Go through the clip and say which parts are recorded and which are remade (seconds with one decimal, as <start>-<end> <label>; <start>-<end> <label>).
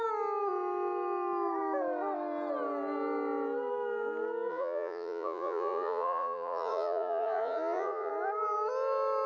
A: 0.0-4.5 recorded; 4.5-8.1 remade; 8.1-9.3 recorded